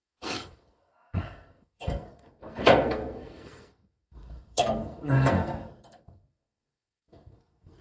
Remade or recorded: remade